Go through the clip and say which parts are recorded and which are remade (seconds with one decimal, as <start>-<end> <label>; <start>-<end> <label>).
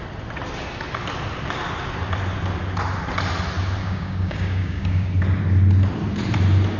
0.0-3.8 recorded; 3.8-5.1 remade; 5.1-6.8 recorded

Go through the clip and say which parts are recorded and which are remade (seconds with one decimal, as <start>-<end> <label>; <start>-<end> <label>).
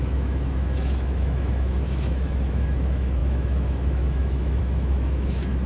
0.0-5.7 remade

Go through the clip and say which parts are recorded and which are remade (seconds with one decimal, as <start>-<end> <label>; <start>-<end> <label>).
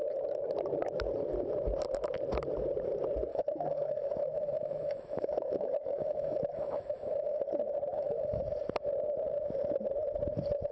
0.0-3.3 recorded; 3.3-7.4 remade; 7.4-7.9 recorded; 7.9-8.4 remade; 8.4-10.7 recorded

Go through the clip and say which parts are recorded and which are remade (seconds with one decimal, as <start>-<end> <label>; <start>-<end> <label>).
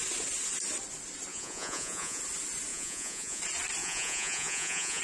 0.0-1.3 recorded; 1.3-2.2 remade; 2.2-2.7 recorded; 2.7-3.4 remade; 3.4-3.8 recorded; 3.8-5.0 remade